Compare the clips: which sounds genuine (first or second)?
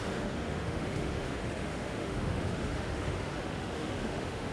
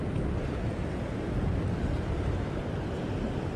second